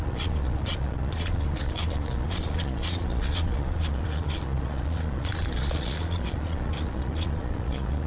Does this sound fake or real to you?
fake